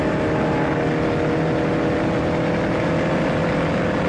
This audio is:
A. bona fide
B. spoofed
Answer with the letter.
A